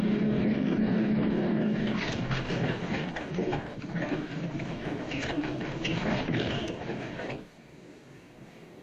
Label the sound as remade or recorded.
remade